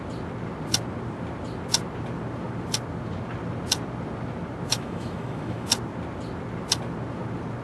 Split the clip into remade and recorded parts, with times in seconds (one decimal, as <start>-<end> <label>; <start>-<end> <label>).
0.0-4.7 recorded; 4.7-5.7 remade; 5.7-7.6 recorded